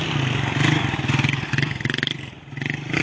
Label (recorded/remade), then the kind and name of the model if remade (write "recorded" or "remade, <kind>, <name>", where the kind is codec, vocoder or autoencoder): recorded